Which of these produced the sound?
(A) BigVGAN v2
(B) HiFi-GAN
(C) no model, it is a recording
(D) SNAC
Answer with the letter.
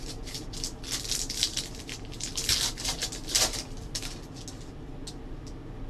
C